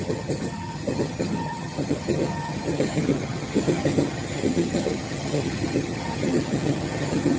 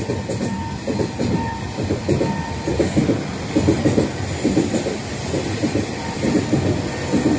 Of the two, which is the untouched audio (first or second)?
second